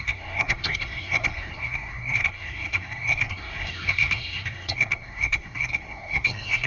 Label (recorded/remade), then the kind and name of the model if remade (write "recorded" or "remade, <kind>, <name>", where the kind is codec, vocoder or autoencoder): remade, codec, SNAC